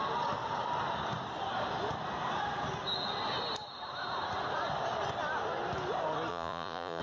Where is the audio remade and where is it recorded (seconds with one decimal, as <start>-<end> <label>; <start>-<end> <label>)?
0.0-6.3 recorded; 6.3-7.0 remade

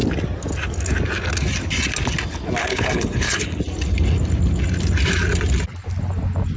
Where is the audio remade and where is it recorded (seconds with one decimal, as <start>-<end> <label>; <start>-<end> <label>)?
0.0-2.6 recorded; 2.6-3.6 remade; 3.6-6.6 recorded